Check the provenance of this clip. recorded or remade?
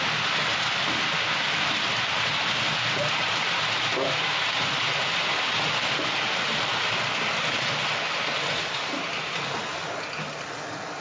recorded